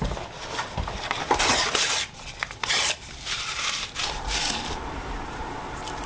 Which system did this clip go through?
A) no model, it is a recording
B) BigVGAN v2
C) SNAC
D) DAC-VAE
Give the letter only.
B